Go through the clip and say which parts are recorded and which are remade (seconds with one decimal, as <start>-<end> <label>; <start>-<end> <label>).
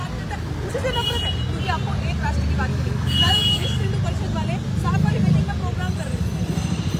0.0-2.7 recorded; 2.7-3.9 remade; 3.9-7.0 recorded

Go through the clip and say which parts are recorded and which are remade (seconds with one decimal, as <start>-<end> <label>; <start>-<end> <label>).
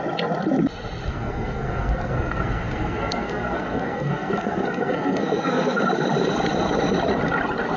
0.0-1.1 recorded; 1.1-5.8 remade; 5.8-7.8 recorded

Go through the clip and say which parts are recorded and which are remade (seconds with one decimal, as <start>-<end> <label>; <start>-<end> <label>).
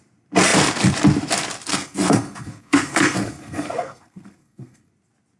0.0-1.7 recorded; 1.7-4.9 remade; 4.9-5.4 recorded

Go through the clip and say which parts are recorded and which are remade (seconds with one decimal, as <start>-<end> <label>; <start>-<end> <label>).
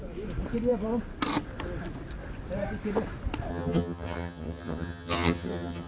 0.0-3.5 recorded; 3.5-5.9 remade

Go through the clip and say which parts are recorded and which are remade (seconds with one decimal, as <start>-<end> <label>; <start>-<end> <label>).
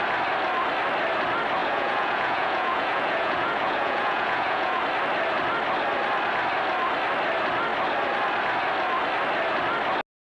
0.0-1.6 recorded; 1.6-4.8 remade; 4.8-10.2 recorded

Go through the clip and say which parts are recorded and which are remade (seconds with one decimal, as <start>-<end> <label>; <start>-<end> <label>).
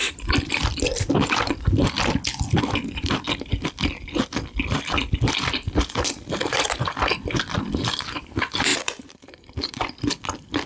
0.0-8.7 recorded; 8.7-10.0 remade; 10.0-10.7 recorded